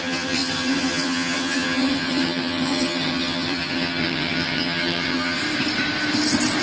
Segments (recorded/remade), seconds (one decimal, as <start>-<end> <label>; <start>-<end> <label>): 0.0-5.4 remade; 5.4-6.6 recorded